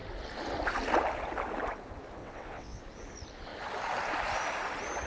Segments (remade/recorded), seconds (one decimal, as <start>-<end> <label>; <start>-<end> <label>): 0.0-2.2 recorded; 2.2-2.8 remade; 2.8-5.1 recorded